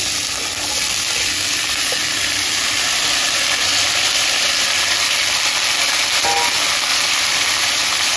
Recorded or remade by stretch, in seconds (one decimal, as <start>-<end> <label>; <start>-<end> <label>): 0.0-2.0 recorded; 2.0-4.5 remade; 4.5-6.9 recorded; 6.9-7.7 remade; 7.7-8.2 recorded